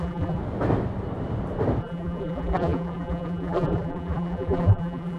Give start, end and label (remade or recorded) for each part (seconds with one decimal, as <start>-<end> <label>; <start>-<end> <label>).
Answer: 0.0-0.4 remade; 0.4-1.8 recorded; 1.8-5.2 remade